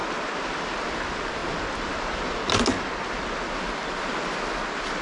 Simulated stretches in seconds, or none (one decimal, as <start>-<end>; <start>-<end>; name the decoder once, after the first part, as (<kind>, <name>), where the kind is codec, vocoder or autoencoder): none